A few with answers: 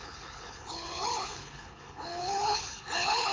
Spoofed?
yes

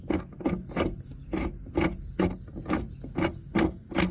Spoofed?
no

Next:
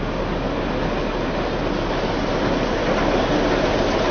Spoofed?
no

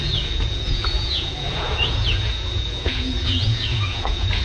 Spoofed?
yes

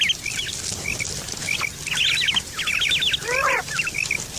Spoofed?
no